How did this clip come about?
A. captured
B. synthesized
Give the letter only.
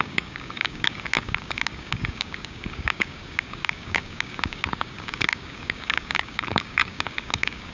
B